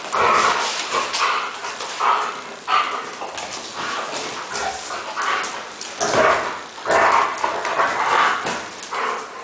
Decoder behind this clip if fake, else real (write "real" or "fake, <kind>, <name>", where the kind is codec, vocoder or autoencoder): real